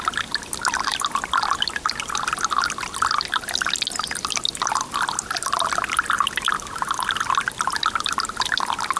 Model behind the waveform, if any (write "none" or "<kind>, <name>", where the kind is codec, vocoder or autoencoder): none